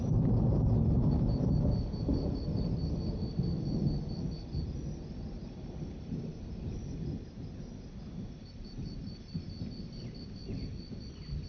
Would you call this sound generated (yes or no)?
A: no